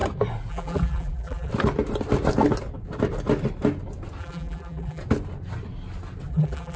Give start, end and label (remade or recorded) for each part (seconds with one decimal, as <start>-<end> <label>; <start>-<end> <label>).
0.0-0.5 recorded; 0.5-1.5 remade; 1.5-4.2 recorded; 4.2-5.0 remade; 5.0-6.3 recorded; 6.3-6.8 remade